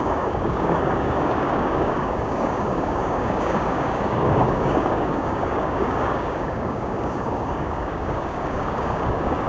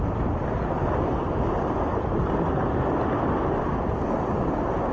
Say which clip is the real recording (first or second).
second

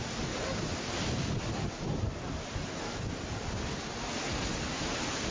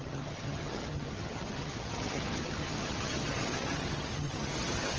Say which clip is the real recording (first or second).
first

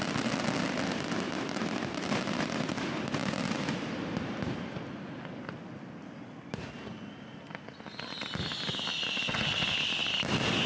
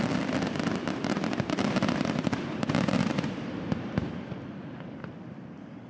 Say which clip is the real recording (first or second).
first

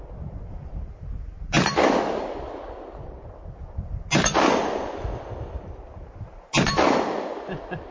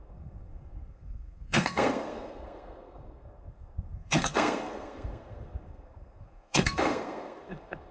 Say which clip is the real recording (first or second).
first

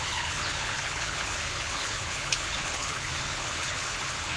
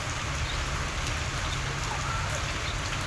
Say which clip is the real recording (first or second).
second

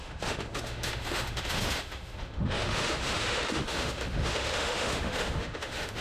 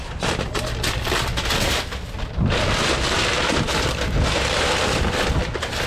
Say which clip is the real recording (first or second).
second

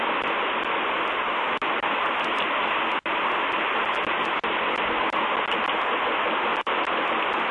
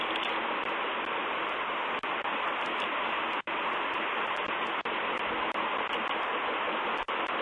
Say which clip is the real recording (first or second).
first